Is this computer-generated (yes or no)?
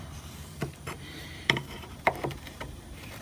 yes